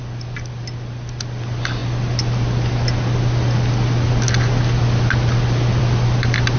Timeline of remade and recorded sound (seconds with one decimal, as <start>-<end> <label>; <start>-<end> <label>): 0.0-6.6 recorded